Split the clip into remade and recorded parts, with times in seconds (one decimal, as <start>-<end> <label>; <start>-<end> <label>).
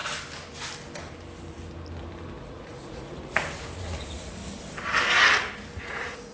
0.0-2.4 recorded; 2.4-4.4 remade; 4.4-5.8 recorded; 5.8-6.3 remade